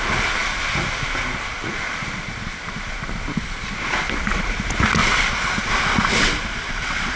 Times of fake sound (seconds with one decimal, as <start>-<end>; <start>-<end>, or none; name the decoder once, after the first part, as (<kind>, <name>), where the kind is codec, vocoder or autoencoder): 6.5-7.2 (vocoder, WaveNeXt)